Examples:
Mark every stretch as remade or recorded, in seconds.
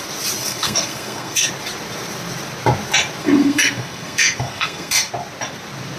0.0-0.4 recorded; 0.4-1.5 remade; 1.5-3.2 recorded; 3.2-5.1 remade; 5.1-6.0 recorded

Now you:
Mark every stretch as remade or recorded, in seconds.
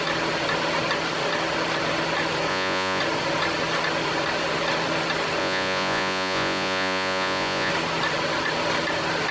0.0-2.5 recorded; 2.5-3.0 remade; 3.0-5.4 recorded; 5.4-7.7 remade; 7.7-9.3 recorded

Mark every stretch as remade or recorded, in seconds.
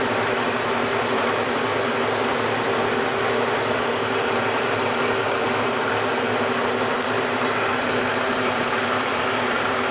0.0-1.7 remade; 1.7-4.4 recorded; 4.4-9.9 remade